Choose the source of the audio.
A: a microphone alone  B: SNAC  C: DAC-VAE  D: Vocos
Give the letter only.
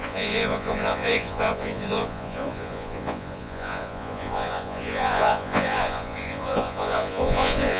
D